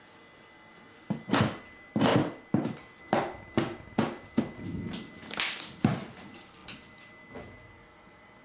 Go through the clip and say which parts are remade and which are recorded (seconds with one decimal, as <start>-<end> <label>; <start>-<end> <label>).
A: 0.0-8.4 recorded